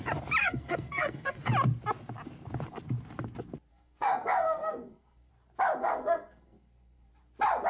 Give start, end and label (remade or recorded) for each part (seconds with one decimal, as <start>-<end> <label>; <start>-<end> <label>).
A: 0.0-0.4 recorded; 0.4-1.5 remade; 1.5-3.7 recorded; 3.7-5.3 remade; 5.3-5.8 recorded; 5.8-7.1 remade; 7.1-7.7 recorded